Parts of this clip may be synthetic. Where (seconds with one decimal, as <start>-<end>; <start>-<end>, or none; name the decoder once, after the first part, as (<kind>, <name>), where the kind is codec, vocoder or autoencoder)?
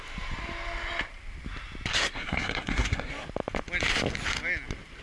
1.9-3.1 (codec, SNAC)